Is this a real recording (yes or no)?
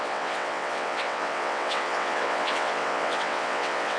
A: no